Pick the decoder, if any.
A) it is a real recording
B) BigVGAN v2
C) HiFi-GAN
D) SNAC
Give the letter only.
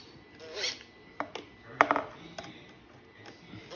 A